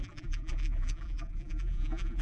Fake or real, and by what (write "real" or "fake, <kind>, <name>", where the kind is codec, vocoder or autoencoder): fake, vocoder, BigVGAN v2